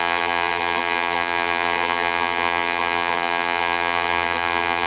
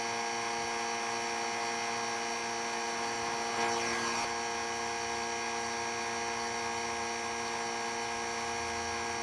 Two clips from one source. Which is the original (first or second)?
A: second